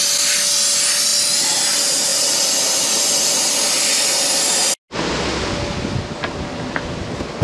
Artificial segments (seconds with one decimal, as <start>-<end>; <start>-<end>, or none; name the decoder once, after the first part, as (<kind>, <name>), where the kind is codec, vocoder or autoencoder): 1.1-1.6 (vocoder, BigVGAN v2)